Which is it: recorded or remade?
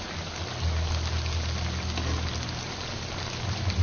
recorded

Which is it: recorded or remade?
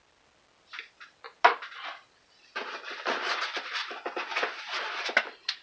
recorded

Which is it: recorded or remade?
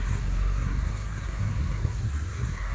remade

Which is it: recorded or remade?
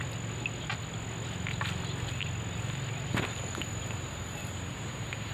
recorded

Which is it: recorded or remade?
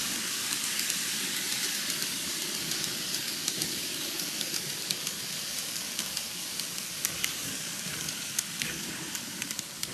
remade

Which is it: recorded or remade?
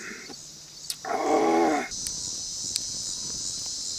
recorded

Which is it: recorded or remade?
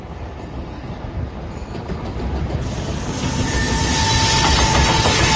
recorded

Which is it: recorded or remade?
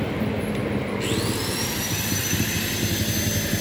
recorded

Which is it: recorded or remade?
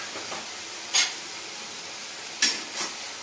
remade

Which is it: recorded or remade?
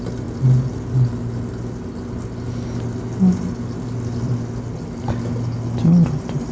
recorded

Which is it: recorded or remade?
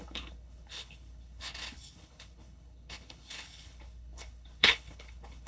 remade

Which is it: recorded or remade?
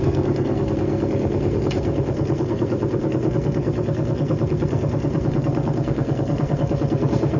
remade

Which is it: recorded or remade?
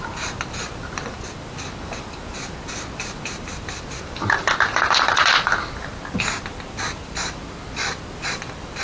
remade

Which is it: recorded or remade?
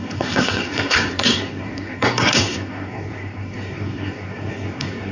remade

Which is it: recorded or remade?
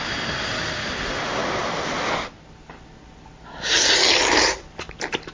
recorded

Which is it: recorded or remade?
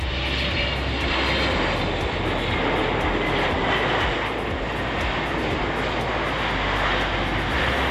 recorded